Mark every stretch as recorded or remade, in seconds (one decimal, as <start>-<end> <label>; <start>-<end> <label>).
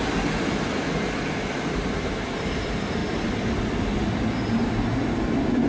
0.0-5.7 recorded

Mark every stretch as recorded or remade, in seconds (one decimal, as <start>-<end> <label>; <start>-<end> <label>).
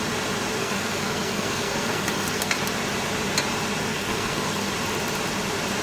0.0-0.6 recorded; 0.6-2.6 remade; 2.6-3.9 recorded; 3.9-4.7 remade; 4.7-5.8 recorded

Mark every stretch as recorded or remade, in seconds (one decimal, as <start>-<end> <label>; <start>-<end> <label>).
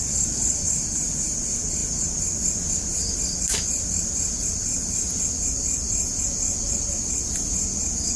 0.0-8.2 recorded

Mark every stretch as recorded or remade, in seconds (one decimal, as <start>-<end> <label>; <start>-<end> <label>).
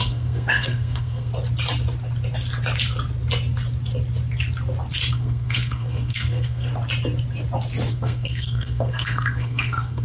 0.0-1.3 remade; 1.3-5.1 recorded; 5.1-6.7 remade; 6.7-7.9 recorded; 7.9-10.0 remade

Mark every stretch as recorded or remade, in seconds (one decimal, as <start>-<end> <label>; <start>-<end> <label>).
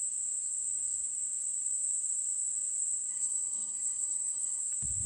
0.0-3.1 recorded; 3.1-4.6 remade; 4.6-5.1 recorded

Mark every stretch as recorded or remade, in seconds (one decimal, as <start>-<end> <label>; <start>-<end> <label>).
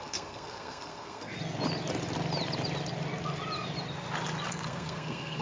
0.0-1.3 remade; 1.3-4.5 recorded; 4.5-5.4 remade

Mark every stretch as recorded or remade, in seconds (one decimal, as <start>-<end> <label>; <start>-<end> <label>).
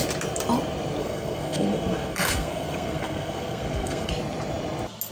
0.0-1.0 recorded; 1.0-4.1 remade; 4.1-5.1 recorded